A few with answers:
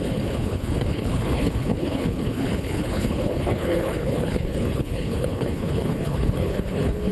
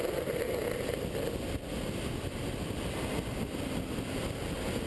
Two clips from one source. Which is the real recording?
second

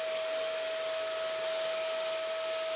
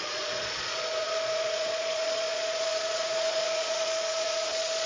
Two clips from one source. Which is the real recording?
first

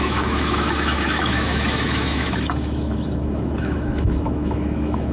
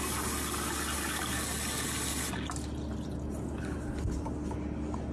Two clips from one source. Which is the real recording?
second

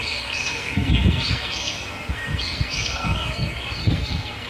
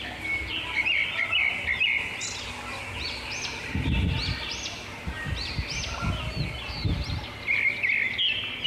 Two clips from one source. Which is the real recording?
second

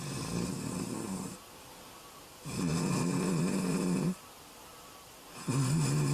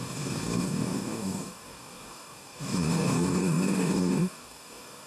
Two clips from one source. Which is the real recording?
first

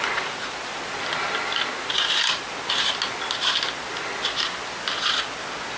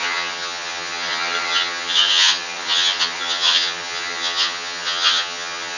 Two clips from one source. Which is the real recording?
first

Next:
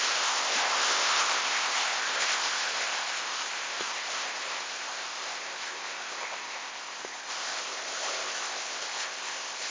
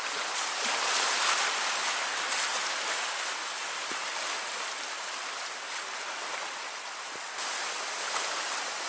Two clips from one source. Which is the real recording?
second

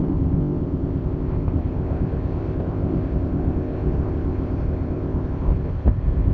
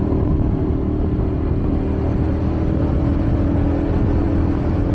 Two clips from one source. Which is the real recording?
second